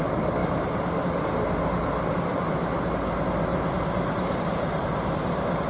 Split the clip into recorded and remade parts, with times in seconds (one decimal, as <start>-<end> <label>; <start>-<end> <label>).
0.0-0.4 recorded; 0.4-1.0 remade; 1.0-2.3 recorded; 2.3-2.9 remade; 2.9-3.5 recorded; 3.5-5.1 remade; 5.1-5.7 recorded